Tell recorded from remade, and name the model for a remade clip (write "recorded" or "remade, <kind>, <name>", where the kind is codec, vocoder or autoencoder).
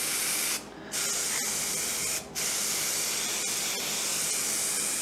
recorded